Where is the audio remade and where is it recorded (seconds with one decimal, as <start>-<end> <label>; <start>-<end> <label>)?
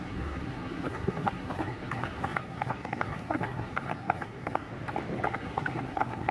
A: 0.0-4.7 remade; 4.7-5.3 recorded; 5.3-6.3 remade